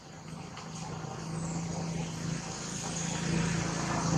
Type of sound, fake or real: real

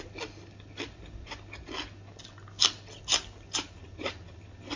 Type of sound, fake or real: real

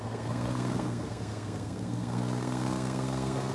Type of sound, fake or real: fake